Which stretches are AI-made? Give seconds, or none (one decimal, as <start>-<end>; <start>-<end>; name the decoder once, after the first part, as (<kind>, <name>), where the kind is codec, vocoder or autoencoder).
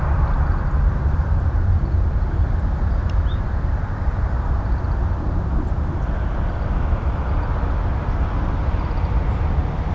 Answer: 0.9-1.8 (vocoder, BigVGAN v2); 2.4-4.5